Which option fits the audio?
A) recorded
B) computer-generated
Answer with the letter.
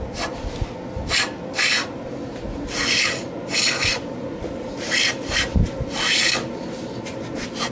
A